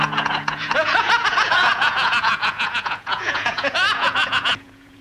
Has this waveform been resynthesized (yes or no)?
yes